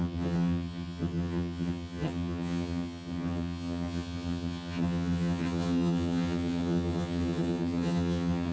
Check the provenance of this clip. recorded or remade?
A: remade